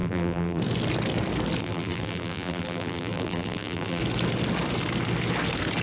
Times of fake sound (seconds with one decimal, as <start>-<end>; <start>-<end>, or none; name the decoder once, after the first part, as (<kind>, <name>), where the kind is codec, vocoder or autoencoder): 0.0-0.6 (vocoder, BigVGAN v2); 1.6-4.0